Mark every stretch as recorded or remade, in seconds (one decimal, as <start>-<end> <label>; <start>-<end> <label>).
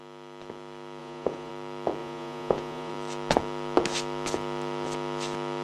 0.0-1.0 recorded; 1.0-1.5 remade; 1.5-2.0 recorded; 2.0-2.9 remade; 2.9-5.6 recorded